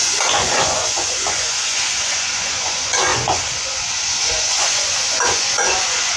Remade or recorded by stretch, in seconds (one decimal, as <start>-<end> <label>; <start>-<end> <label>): 0.0-6.2 remade